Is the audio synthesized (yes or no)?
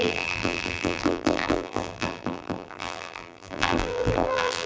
yes